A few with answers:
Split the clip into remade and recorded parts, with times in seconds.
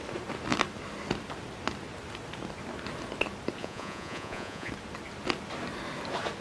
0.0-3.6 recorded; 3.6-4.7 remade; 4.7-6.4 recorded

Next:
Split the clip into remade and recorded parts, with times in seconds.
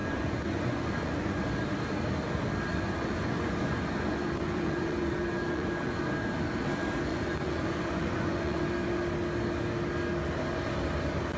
0.0-1.4 remade; 1.4-2.7 recorded; 2.7-6.0 remade; 6.0-7.1 recorded; 7.1-8.6 remade; 8.6-11.4 recorded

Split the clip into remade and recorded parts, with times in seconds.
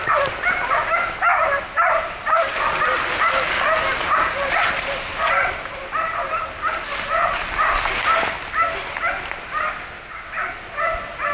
0.0-11.3 recorded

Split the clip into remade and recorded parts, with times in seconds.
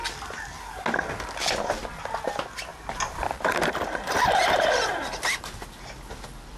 0.0-6.6 recorded